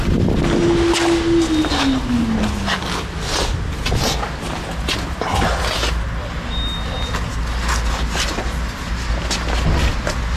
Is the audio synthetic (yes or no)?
no